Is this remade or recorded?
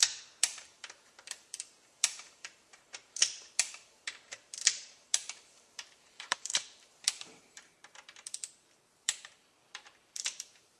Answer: remade